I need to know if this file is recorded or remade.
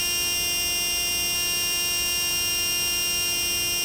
recorded